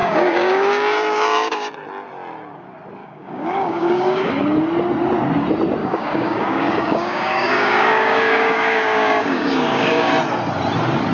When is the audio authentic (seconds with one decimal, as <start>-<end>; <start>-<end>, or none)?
1.7-3.0; 4.3-5.8; 10.1-11.1